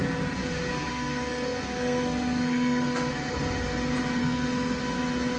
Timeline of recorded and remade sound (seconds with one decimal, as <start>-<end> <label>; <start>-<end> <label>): 0.0-0.9 recorded; 0.9-3.1 remade; 3.1-4.2 recorded; 4.2-4.8 remade; 4.8-5.4 recorded